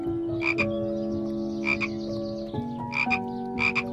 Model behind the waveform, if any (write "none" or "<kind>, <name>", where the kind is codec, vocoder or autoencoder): none